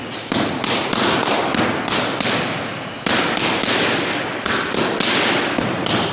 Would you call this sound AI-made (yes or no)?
no